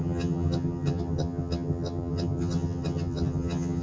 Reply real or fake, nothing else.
fake